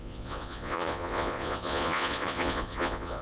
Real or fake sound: fake